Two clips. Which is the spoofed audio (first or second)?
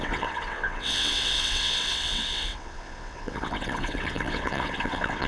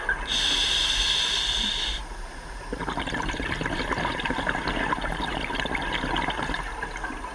first